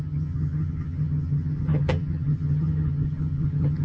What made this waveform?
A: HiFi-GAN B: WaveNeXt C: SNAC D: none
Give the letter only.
A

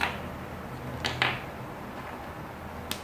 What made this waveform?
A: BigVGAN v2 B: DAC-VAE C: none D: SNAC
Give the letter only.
C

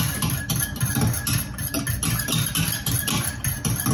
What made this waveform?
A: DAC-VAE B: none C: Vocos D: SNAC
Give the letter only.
B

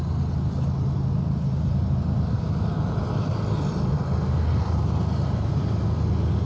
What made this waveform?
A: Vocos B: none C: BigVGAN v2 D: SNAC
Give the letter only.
B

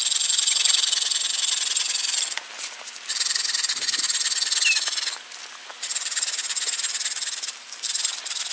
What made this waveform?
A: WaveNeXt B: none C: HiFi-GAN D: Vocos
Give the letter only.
B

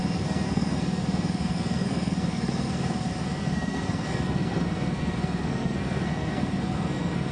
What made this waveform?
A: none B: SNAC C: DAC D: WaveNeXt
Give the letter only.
B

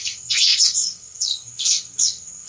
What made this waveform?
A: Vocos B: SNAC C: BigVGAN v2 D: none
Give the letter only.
B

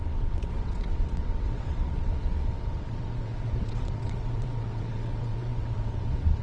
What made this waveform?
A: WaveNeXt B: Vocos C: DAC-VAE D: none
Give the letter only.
A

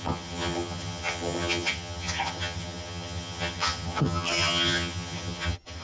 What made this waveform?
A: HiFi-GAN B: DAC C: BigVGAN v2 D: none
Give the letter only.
A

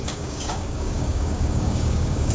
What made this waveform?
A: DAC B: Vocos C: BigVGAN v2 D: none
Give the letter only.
A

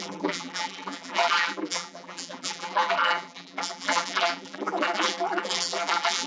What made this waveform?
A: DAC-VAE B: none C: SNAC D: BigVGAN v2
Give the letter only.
D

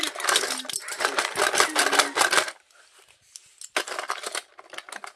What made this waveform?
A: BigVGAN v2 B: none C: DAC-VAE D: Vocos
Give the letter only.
B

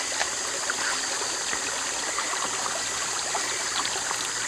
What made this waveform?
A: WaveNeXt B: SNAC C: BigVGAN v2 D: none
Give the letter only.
D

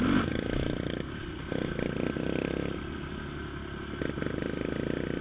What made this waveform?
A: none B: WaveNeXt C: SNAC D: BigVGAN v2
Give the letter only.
A